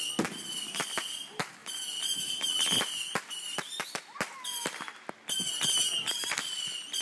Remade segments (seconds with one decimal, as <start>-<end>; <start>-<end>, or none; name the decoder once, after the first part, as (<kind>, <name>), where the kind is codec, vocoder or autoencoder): none